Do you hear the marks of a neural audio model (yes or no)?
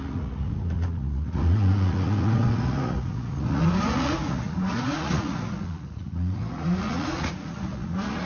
yes